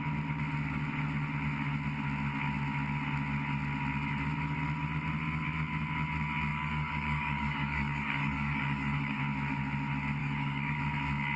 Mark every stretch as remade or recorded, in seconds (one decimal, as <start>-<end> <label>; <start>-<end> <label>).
0.0-6.5 recorded; 6.5-9.2 remade; 9.2-10.2 recorded; 10.2-10.8 remade; 10.8-11.4 recorded